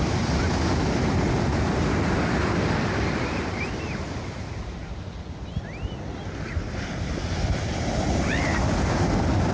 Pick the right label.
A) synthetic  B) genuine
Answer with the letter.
B